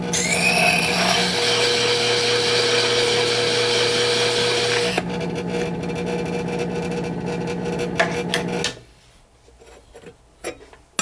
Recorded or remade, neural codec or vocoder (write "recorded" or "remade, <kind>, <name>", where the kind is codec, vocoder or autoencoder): recorded